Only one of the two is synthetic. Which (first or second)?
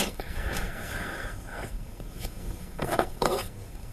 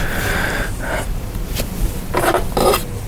first